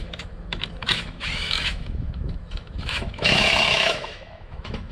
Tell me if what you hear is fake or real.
fake